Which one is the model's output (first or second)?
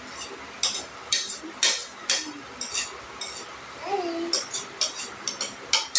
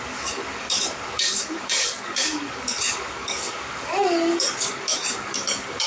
second